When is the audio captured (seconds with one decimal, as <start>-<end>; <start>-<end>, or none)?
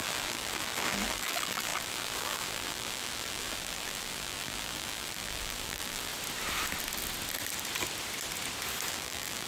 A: 6.1-8.9